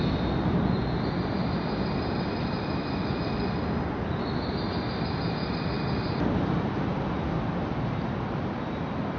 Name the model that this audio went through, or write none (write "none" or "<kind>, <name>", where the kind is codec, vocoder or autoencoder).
none